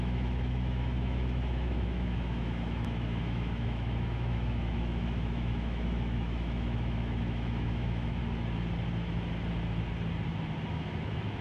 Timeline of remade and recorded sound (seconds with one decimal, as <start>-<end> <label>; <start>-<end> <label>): 0.0-8.2 remade; 8.2-10.7 recorded; 10.7-11.4 remade